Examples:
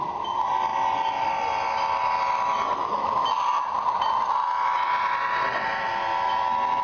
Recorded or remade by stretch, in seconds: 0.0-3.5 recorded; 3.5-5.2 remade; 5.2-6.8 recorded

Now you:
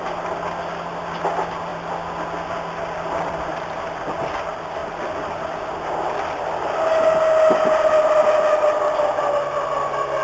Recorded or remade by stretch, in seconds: 0.0-10.2 recorded

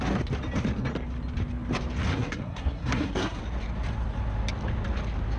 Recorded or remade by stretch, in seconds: 0.0-2.1 recorded; 2.1-3.4 remade; 3.4-5.4 recorded

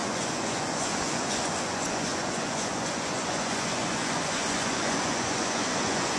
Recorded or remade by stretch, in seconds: 0.0-6.2 remade

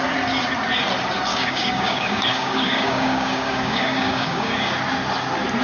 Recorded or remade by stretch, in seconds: 0.0-1.3 recorded; 1.3-4.7 remade; 4.7-5.6 recorded

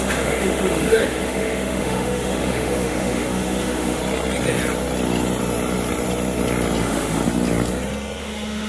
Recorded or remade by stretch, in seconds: 0.0-4.0 remade; 4.0-6.8 recorded; 6.8-7.2 remade; 7.2-8.2 recorded; 8.2-8.7 remade

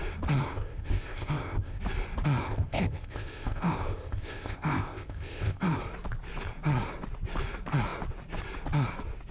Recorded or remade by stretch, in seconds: 0.0-0.4 recorded; 0.4-1.8 remade; 1.8-2.4 recorded; 2.4-5.8 remade; 5.8-9.3 recorded

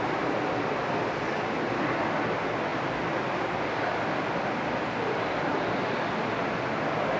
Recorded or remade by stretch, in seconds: 0.0-7.2 recorded